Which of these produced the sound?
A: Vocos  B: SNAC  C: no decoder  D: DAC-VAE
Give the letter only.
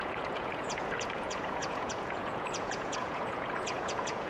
A